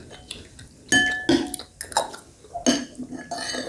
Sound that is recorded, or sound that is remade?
recorded